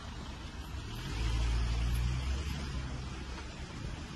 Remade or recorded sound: recorded